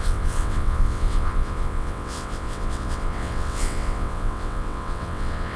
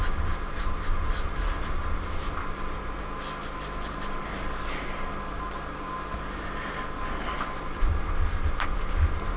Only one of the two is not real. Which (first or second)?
first